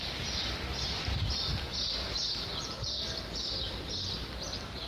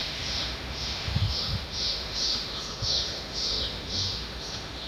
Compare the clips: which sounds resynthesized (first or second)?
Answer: second